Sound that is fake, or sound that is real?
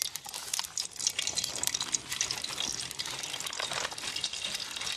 real